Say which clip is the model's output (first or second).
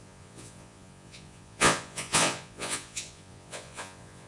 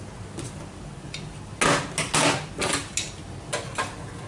first